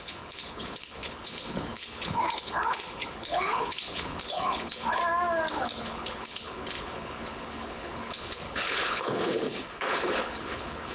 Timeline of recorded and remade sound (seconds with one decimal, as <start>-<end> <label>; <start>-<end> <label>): 0.0-5.0 remade; 5.0-5.5 recorded; 5.5-10.9 remade